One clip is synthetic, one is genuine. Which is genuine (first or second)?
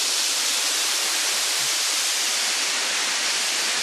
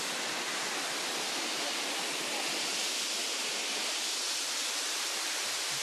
second